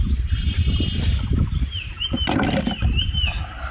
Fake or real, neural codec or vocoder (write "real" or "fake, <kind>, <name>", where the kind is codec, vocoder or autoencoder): real